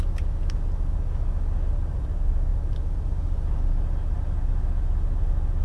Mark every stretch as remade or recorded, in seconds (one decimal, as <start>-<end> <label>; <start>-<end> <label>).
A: 0.0-5.6 recorded